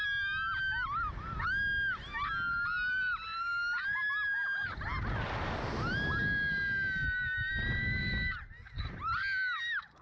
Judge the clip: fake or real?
real